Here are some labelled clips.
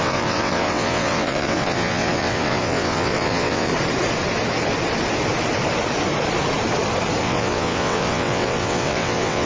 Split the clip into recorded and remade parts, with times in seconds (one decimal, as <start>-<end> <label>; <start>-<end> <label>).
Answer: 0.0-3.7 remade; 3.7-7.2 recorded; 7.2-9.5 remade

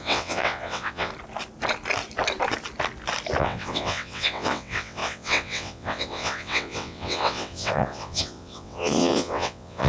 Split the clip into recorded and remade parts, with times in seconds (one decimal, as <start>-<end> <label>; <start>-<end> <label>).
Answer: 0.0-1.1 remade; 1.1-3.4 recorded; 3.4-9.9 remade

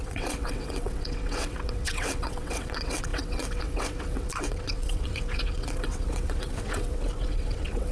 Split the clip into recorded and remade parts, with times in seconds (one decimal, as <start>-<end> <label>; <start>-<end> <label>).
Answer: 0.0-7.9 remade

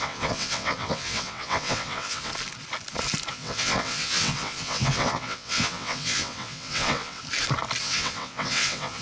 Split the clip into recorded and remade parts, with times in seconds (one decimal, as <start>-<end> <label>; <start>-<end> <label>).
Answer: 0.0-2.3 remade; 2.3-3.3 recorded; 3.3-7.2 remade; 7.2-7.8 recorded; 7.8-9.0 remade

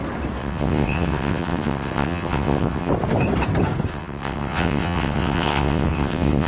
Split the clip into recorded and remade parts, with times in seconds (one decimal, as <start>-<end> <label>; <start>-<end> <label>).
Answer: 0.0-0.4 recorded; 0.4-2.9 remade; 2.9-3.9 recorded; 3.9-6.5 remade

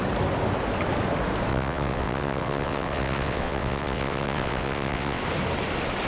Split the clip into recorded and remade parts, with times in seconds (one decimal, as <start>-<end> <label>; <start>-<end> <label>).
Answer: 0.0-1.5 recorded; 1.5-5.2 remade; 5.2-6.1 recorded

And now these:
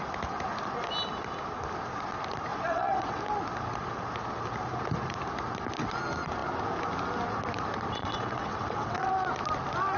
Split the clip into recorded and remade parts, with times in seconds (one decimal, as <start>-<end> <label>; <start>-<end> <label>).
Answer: 0.0-2.5 recorded; 2.5-3.2 remade; 3.2-8.0 recorded; 8.0-9.1 remade; 9.1-10.0 recorded